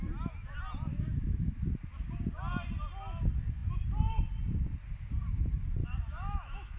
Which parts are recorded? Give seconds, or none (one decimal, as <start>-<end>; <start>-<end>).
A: 0.0-0.9; 1.6-5.8